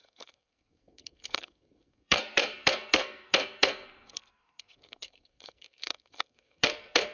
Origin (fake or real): fake